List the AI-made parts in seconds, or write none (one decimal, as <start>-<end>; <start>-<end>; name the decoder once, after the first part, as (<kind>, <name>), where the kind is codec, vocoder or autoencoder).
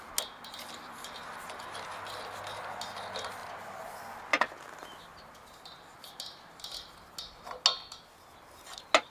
none